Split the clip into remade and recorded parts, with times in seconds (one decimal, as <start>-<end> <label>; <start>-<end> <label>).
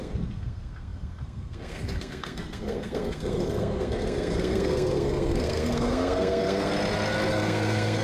0.0-6.7 remade; 6.7-7.3 recorded; 7.3-8.0 remade